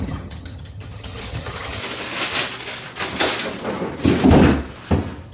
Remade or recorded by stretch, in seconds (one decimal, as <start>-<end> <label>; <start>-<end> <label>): 0.0-1.8 remade; 1.8-5.3 recorded